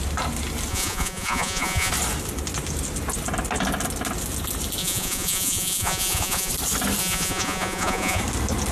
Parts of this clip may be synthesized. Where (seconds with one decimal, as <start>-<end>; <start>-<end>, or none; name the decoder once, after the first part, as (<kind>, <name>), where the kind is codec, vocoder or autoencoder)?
0.7-1.9 (vocoder, Vocos); 4.8-6.5; 7.0-8.2